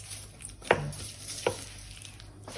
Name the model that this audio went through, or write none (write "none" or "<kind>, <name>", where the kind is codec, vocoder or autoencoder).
none